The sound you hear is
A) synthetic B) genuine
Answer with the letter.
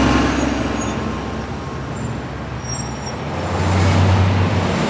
B